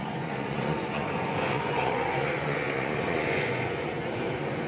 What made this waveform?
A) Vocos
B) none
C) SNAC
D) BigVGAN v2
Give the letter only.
A